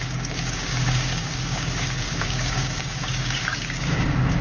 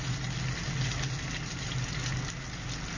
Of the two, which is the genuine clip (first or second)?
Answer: second